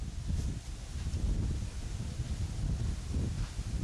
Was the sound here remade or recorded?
recorded